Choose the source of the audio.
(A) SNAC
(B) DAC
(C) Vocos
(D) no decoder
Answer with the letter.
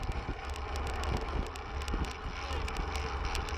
D